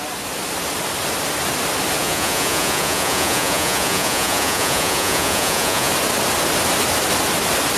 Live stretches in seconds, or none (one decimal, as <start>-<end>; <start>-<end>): 0.0-2.0; 5.9-7.8